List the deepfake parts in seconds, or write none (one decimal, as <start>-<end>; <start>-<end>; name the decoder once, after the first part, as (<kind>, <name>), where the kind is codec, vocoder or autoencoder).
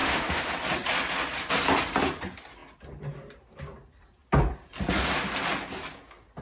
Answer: 0.0-0.5 (autoencoder, DAC-VAE)